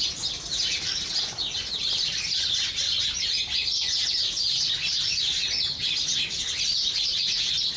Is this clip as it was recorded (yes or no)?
yes